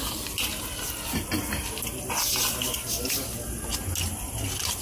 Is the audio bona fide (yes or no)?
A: yes